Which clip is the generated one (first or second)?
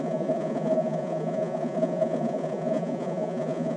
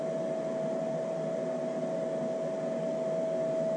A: first